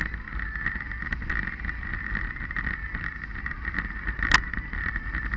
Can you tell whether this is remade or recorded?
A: recorded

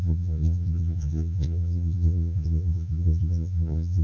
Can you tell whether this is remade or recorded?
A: remade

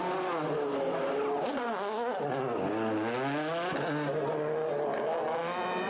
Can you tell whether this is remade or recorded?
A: recorded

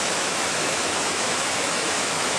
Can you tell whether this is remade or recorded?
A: remade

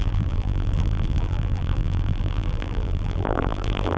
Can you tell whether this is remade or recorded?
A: remade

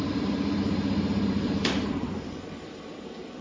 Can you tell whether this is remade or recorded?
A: remade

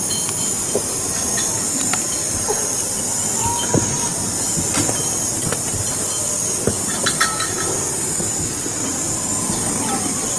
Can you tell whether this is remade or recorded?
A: remade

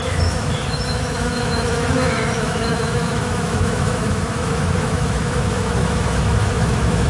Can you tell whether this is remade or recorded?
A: remade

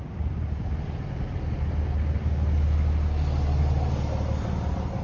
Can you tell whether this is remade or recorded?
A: recorded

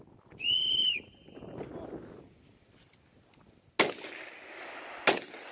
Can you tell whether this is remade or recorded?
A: recorded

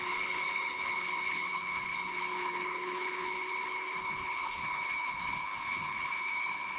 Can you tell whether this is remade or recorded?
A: remade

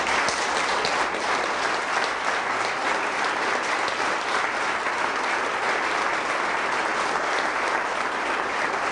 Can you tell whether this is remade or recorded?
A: recorded